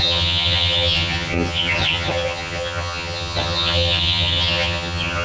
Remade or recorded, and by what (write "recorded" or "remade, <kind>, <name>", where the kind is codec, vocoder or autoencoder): remade, vocoder, HiFi-GAN